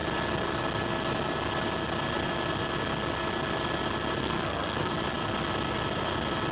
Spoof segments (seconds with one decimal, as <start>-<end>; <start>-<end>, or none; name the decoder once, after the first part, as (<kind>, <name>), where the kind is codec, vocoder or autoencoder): 4.2-4.9 (codec, SNAC)

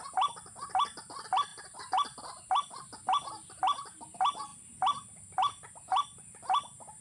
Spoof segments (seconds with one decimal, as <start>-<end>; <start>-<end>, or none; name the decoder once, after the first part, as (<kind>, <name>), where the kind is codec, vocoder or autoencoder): none

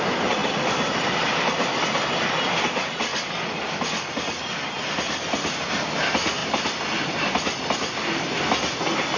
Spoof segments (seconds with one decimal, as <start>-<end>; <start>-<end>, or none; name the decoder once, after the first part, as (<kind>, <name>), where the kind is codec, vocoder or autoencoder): none